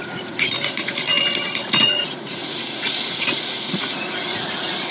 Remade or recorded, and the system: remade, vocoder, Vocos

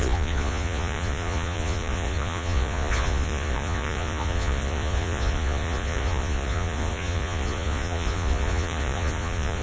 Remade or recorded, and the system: remade, vocoder, Vocos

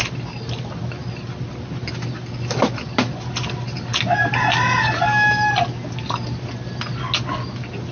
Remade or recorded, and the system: recorded